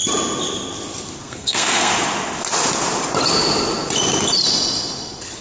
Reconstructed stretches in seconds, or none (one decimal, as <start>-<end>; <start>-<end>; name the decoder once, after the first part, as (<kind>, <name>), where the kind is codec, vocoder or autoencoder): 1.2-1.9 (codec, SNAC)